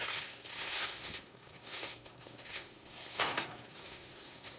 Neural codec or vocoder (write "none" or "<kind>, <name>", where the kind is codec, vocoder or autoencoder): codec, SNAC